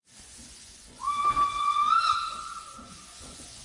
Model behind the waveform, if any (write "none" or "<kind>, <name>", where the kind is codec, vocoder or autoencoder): vocoder, Vocos